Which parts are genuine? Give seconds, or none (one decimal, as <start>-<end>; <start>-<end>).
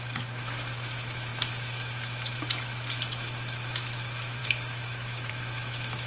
none